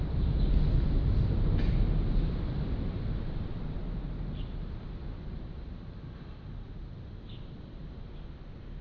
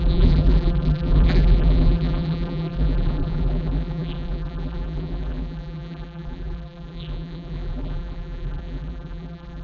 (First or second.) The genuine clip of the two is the first